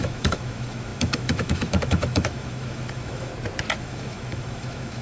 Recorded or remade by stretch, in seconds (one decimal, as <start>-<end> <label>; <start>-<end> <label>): 0.0-3.3 remade; 3.3-3.8 recorded; 3.8-5.0 remade